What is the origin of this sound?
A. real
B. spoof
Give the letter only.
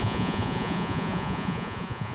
B